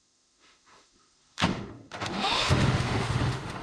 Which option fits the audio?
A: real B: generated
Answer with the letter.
B